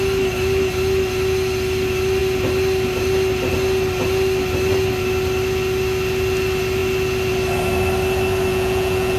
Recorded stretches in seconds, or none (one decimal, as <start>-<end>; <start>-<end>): 0.0-8.5